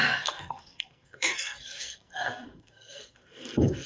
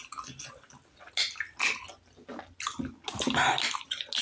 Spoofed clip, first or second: first